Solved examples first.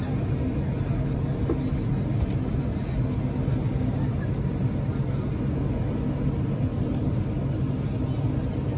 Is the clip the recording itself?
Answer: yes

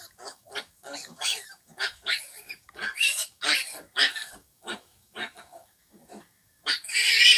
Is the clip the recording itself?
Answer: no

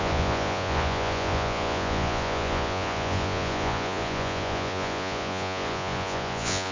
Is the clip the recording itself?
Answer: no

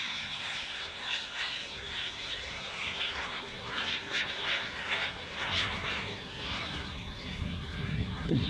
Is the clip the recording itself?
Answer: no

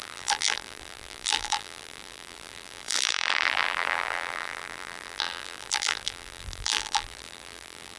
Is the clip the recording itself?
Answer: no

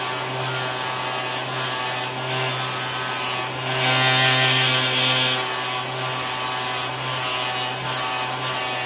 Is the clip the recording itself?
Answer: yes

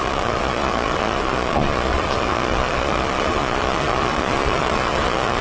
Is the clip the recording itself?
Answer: no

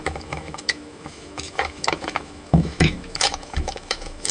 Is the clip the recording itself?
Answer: no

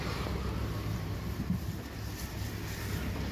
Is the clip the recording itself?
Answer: yes